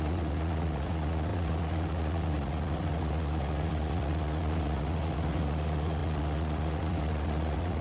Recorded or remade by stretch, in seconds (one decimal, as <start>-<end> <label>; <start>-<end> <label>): 0.0-7.8 remade